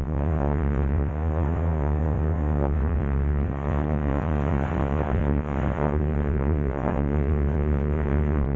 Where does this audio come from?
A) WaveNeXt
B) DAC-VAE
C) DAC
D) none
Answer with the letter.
A